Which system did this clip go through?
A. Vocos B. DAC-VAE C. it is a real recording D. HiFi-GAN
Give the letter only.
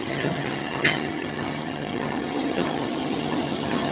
D